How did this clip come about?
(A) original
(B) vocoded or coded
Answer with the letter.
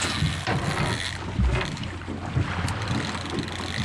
A